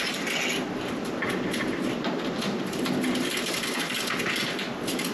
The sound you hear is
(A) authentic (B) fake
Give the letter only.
A